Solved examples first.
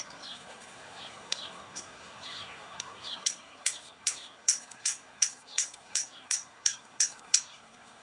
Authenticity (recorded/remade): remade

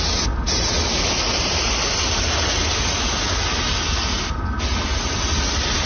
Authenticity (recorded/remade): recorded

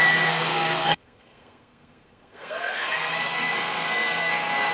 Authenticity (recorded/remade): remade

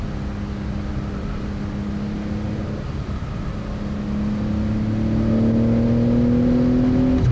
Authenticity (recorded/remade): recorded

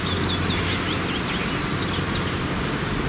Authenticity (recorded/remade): recorded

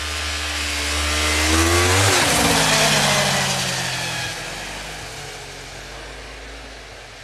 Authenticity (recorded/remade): recorded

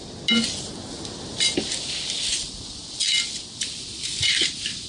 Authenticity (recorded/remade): recorded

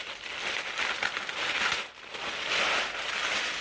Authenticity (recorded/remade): recorded